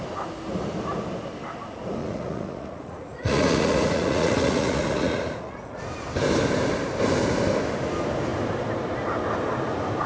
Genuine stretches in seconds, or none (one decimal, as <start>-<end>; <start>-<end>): 0.0-2.0; 5.8-10.1

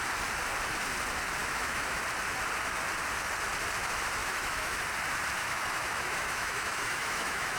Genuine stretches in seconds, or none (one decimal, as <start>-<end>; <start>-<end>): 0.0-1.4; 2.0-4.2; 4.8-5.4